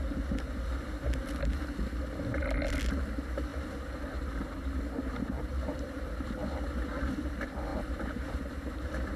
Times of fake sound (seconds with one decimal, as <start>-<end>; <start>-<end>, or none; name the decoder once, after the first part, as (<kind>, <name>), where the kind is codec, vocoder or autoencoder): 3.5-4.8 (vocoder, BigVGAN v2); 5.5-6.1; 7.7-9.2